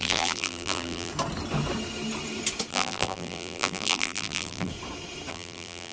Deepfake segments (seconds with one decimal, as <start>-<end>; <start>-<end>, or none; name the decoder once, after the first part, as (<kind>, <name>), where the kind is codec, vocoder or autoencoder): 0.0-1.1 (vocoder, BigVGAN v2); 2.7-4.7; 5.3-5.9